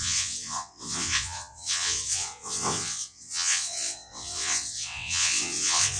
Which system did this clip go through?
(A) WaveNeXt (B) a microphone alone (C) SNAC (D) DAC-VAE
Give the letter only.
A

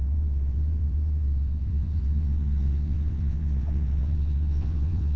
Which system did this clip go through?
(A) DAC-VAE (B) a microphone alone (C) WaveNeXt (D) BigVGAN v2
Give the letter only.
C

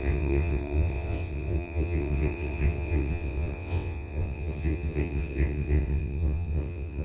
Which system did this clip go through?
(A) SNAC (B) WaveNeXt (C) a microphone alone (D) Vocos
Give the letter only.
B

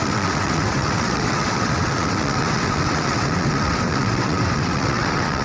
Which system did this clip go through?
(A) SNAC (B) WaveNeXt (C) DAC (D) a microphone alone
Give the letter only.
B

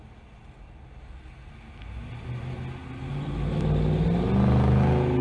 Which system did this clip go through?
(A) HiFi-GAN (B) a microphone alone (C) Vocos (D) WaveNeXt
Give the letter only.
B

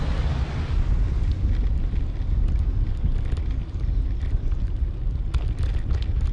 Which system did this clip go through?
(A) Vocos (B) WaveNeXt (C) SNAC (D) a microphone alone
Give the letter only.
D